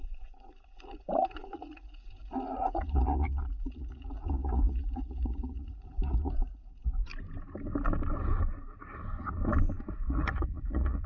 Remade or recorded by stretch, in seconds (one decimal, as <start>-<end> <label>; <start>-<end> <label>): 0.0-7.1 remade; 7.1-9.9 recorded; 9.9-11.1 remade